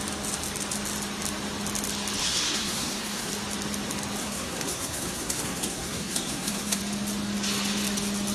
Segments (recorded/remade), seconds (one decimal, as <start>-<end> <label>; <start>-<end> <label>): 0.0-2.2 recorded; 2.2-3.3 remade; 3.3-4.2 recorded; 4.2-6.8 remade; 6.8-8.3 recorded